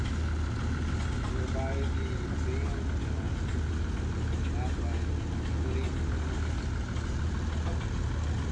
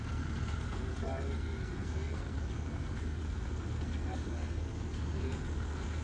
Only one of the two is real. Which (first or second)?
first